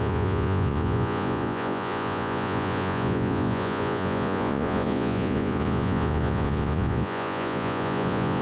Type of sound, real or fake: fake